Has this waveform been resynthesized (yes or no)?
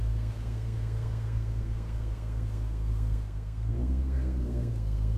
yes